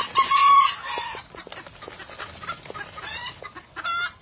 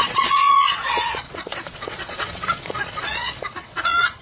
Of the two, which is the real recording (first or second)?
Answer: first